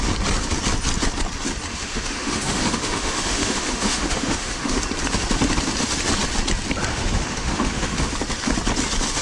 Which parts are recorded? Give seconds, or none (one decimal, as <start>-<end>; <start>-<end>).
0.0-1.7; 4.8-6.9; 8.1-9.2